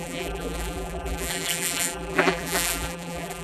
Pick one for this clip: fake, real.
fake